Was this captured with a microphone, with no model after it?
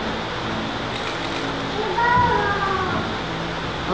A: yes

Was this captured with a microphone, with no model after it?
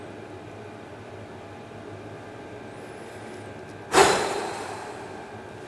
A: yes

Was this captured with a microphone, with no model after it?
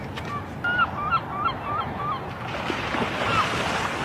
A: yes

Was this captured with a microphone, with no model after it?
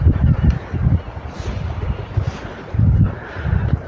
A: no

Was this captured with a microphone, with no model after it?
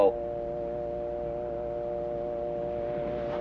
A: yes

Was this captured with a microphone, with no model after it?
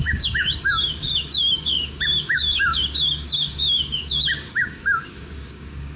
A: no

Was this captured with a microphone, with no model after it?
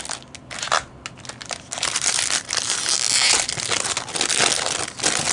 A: yes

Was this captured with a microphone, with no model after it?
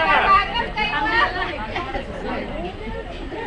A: no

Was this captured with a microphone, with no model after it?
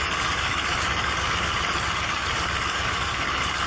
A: no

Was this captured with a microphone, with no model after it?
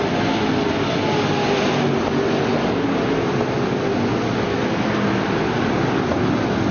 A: yes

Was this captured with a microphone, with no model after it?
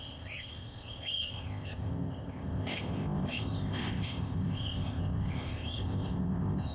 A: no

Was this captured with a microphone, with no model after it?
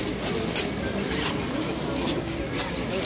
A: yes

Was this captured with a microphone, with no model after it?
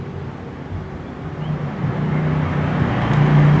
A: yes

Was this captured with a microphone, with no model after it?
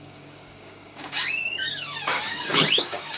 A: no